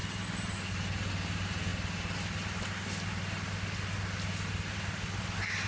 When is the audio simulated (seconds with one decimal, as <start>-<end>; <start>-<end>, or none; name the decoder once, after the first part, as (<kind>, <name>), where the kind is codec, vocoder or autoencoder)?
none